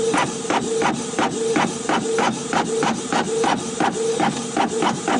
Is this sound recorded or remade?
recorded